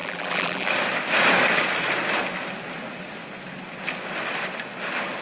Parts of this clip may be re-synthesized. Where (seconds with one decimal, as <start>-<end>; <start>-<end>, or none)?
0.0-0.7